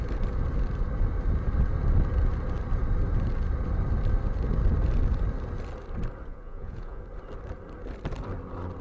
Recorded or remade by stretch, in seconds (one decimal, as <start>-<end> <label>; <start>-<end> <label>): 0.0-6.3 recorded; 6.3-7.0 remade; 7.0-8.8 recorded